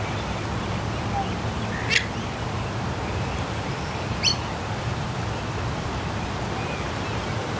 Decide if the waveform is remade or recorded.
recorded